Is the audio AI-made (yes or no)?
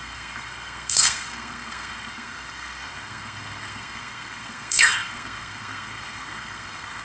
yes